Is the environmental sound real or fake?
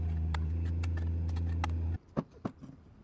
real